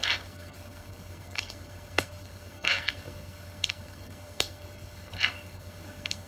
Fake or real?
fake